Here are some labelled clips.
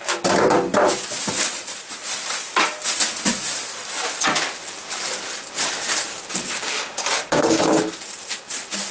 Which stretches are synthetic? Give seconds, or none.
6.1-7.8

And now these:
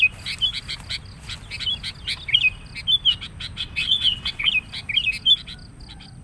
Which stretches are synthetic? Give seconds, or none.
3.6-4.5

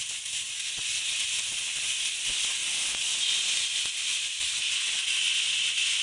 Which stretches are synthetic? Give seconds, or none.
none

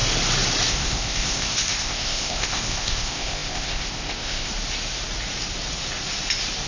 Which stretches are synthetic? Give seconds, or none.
0.7-4.5

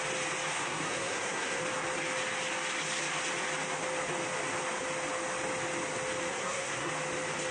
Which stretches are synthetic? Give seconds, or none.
0.5-1.6; 6.3-6.9

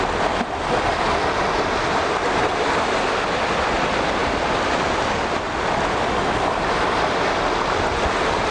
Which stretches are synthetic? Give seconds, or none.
none

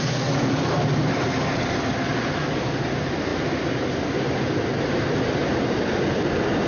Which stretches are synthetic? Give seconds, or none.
none